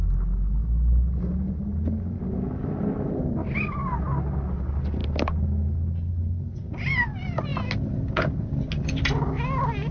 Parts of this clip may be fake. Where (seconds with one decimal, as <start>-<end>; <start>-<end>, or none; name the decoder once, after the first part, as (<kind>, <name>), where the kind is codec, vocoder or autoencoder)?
none